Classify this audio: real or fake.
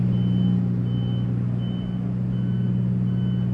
real